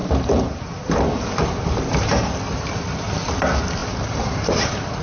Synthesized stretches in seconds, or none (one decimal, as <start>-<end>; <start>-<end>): 0.0-2.1; 3.8-5.0